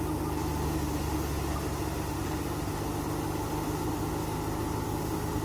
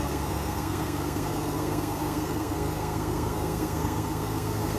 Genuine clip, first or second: first